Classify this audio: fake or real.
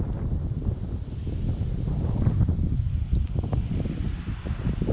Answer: real